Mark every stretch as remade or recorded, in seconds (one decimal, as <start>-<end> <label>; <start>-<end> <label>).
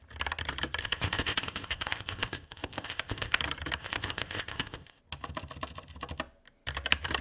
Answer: 0.0-0.8 recorded; 0.8-3.4 remade; 3.4-3.8 recorded; 3.8-5.0 remade; 5.0-7.2 recorded